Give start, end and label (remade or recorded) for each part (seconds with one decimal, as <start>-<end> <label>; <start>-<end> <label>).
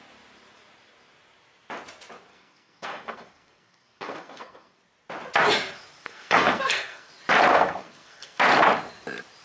0.0-2.3 recorded; 2.3-4.8 remade; 4.8-6.0 recorded; 6.0-7.1 remade; 7.1-7.5 recorded; 7.5-8.4 remade; 8.4-9.4 recorded